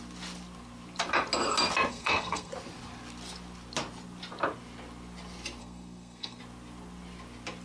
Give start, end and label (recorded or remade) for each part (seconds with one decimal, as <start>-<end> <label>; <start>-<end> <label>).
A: 0.0-1.9 recorded; 1.9-2.5 remade; 2.5-5.6 recorded; 5.6-6.4 remade; 6.4-7.6 recorded

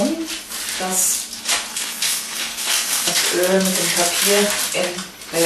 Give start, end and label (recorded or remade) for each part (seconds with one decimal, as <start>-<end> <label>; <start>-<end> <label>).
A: 0.0-1.7 recorded; 1.7-3.1 remade; 3.1-5.5 recorded

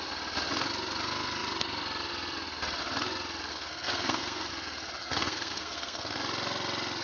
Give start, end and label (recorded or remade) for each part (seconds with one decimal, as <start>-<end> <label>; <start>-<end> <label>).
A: 0.0-3.5 recorded; 3.5-4.5 remade; 4.5-5.0 recorded; 5.0-6.2 remade; 6.2-7.0 recorded

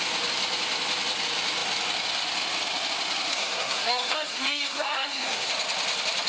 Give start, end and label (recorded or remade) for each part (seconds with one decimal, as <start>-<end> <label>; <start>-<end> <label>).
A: 0.0-3.3 recorded; 3.3-5.5 remade; 5.5-6.3 recorded

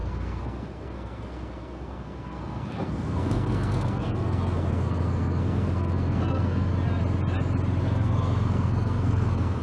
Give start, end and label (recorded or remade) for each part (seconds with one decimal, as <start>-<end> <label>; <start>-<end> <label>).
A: 0.0-6.7 remade; 6.7-7.8 recorded; 7.8-9.6 remade